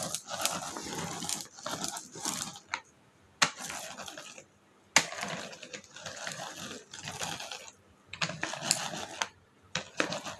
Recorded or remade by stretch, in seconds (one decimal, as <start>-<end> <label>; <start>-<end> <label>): 0.0-10.4 recorded